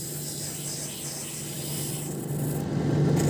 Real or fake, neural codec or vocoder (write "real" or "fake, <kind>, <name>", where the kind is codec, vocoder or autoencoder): real